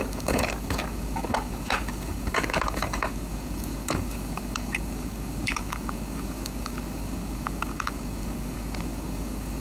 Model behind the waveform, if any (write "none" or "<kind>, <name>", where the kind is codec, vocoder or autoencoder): codec, DAC